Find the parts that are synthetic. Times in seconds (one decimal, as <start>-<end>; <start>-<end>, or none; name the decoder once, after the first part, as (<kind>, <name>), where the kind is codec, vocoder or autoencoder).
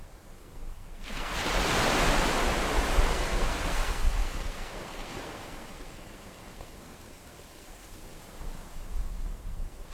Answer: 0.0-1.4 (codec, SNAC); 3.1-9.9